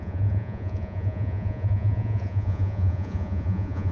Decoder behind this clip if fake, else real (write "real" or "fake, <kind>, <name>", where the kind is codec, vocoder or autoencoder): fake, vocoder, Vocos